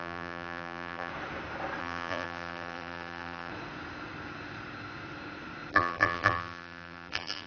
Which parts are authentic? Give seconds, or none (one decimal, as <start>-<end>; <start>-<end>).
1.1-1.8; 3.5-5.7